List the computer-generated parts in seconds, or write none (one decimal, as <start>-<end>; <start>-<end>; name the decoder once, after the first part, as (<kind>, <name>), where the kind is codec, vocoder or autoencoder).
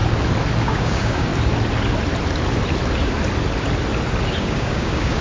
0.6-1.3 (codec, DAC); 4.4-5.2